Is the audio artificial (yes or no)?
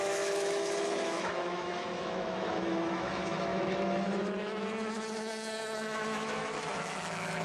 yes